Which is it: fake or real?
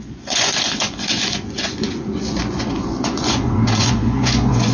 fake